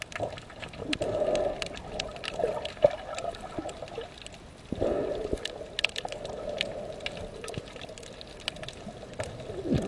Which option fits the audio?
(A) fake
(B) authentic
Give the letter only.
B